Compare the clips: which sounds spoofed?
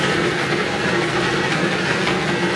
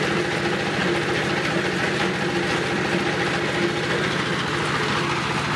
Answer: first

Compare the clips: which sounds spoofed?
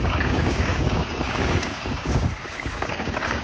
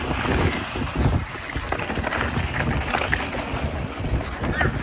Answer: first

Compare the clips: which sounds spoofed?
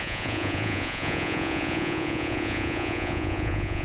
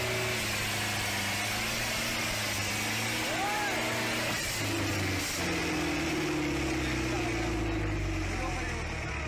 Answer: first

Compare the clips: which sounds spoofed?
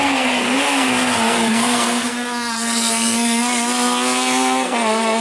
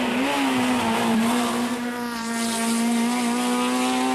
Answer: first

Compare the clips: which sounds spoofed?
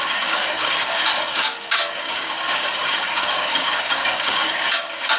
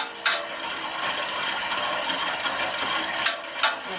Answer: first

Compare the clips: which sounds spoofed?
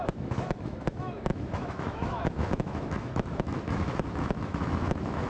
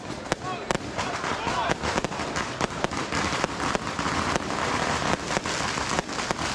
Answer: first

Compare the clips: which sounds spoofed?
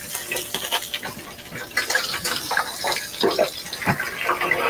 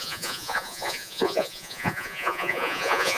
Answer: second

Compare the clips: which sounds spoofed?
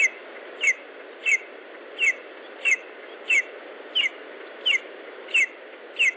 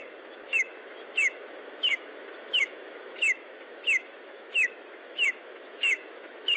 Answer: second